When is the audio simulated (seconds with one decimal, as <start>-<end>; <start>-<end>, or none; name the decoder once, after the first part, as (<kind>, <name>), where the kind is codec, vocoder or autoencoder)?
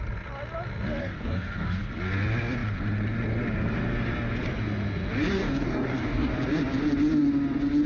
1.0-1.9 (codec, DAC); 5.4-6.3